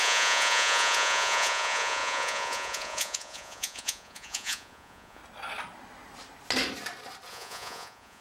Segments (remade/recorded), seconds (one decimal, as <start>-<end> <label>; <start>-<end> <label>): 0.0-5.2 remade; 5.2-7.3 recorded; 7.3-8.2 remade